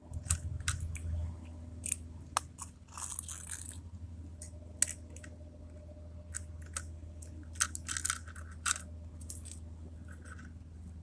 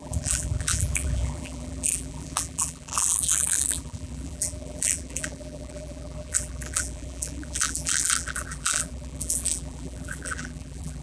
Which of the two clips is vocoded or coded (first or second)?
second